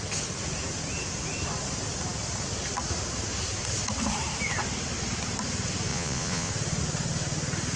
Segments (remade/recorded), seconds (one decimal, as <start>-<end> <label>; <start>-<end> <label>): 0.0-5.9 recorded; 5.9-6.5 remade; 6.5-7.8 recorded